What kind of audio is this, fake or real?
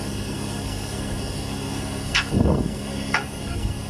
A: fake